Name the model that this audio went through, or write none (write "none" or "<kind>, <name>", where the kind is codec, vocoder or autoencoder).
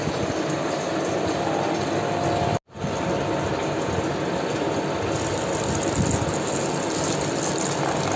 none